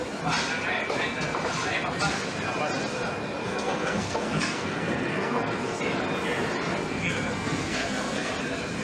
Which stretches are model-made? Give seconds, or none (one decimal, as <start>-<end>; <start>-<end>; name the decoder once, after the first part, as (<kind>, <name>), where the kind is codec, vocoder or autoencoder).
3.4-5.8 (codec, SNAC); 6.9-8.3